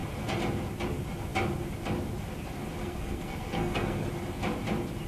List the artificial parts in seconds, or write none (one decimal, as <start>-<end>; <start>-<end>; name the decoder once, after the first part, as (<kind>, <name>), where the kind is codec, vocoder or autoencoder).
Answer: 2.8-4.1 (codec, SNAC)